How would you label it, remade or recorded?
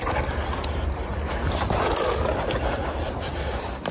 recorded